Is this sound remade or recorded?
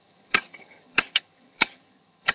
remade